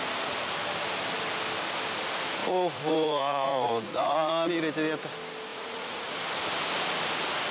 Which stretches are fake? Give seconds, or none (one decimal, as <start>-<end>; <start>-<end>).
2.4-4.5; 5.5-6.2